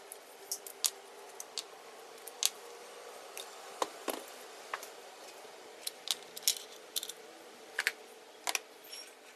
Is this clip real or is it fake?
real